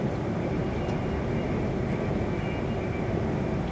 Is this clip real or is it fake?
real